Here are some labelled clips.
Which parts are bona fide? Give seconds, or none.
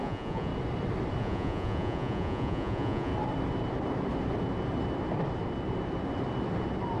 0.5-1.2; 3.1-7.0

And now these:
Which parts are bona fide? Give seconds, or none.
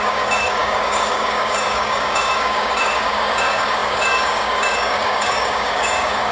none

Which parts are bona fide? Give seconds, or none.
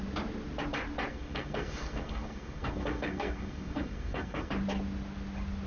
0.0-1.1; 4.5-5.7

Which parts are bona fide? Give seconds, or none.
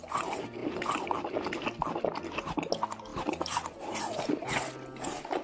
0.0-5.4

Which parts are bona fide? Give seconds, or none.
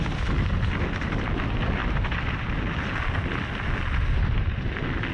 0.0-5.1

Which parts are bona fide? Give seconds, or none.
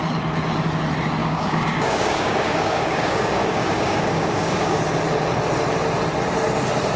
0.0-1.2; 4.8-7.0